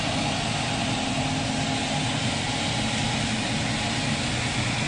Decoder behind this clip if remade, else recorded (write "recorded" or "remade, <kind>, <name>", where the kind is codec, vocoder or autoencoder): recorded